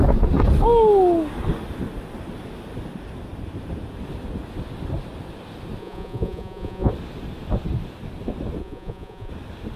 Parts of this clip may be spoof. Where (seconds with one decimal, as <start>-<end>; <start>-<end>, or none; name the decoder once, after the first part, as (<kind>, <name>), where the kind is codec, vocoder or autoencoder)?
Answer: 5.8-6.9 (vocoder, Vocos); 8.6-9.3